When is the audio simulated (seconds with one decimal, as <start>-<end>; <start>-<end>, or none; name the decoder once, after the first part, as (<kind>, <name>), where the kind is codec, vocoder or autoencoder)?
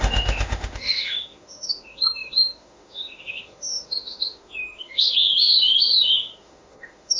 0.0-7.2 (autoencoder, DAC-VAE)